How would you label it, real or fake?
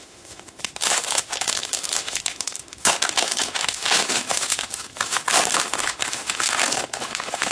fake